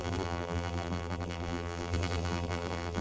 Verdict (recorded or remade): remade